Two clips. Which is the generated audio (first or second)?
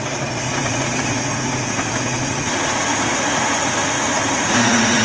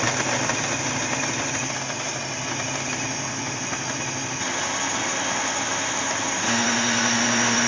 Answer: first